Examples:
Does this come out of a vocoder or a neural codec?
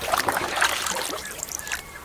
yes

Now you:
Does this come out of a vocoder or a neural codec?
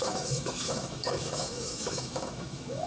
yes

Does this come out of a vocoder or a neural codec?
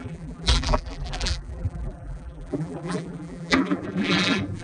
yes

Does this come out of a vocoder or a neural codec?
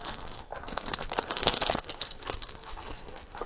yes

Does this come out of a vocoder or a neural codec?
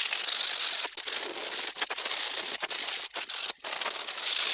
no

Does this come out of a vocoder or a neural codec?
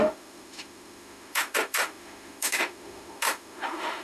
yes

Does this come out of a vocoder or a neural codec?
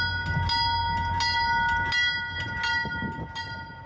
no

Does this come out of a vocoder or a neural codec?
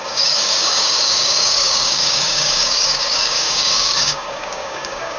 yes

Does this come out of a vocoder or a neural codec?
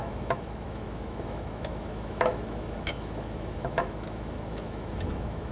yes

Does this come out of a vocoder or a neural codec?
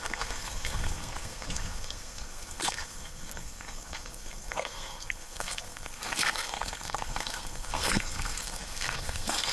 yes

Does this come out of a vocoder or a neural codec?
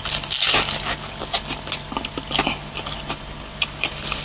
no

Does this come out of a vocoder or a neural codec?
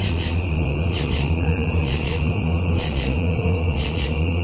yes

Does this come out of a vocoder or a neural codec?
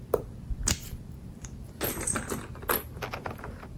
no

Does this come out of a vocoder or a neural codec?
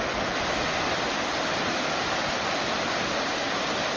no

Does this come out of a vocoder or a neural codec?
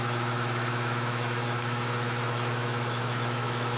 yes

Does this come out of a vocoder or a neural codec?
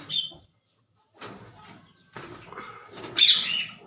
no